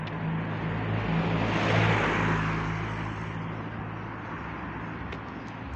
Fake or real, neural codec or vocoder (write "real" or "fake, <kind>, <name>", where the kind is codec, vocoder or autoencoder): real